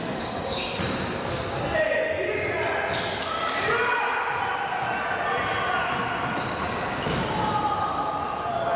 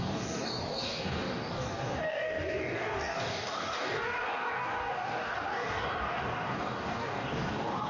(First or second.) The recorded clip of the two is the first